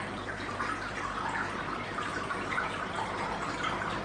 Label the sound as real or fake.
real